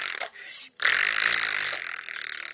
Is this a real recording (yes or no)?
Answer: yes